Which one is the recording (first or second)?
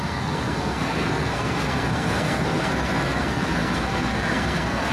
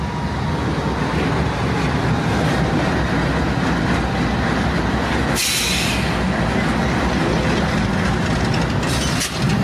second